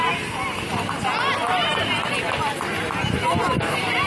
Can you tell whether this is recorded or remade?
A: recorded